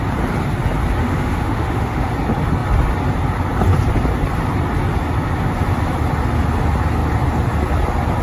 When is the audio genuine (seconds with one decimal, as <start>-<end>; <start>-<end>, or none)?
0.0-1.0; 2.1-8.2